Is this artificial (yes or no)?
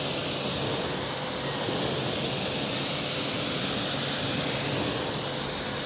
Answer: no